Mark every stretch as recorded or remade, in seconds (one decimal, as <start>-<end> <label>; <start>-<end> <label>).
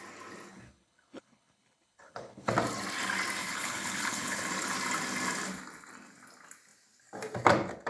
0.0-0.5 recorded; 0.5-2.5 remade; 2.5-3.4 recorded; 3.4-4.4 remade; 4.4-7.9 recorded